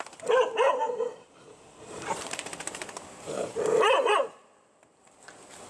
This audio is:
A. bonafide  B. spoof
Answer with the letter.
B